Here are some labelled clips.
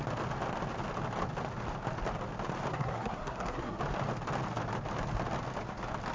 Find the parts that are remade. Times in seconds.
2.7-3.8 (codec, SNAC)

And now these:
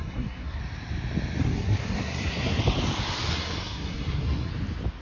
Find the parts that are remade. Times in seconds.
0.0-0.6 (codec, SNAC); 1.4-2.6; 3.3-4.5

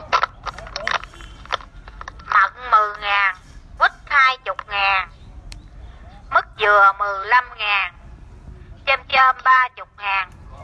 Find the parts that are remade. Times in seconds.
0.0-3.4 (vocoder, BigVGAN v2); 4.8-6.4; 7.5-8.1; 9.1-10.2

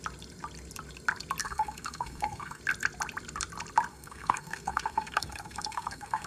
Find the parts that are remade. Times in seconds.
1.4-2.6 (codec, SNAC); 3.9-6.3

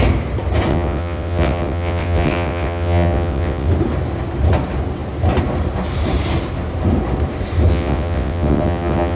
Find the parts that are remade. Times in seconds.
0.7-3.7 (vocoder, WaveNeXt); 7.7-9.2

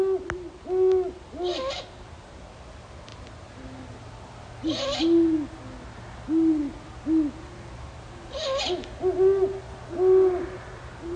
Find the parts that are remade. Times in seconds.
none

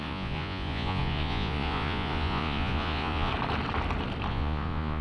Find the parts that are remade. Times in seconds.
0.0-3.3 (vocoder, Vocos); 4.3-5.0

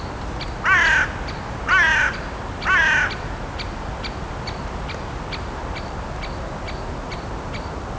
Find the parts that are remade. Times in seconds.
none